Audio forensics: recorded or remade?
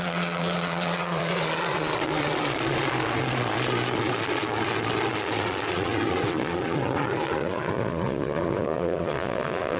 remade